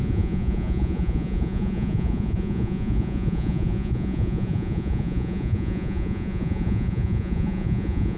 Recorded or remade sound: remade